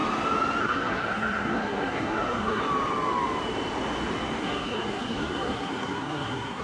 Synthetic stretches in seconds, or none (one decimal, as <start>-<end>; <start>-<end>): 0.6-2.6; 4.4-6.6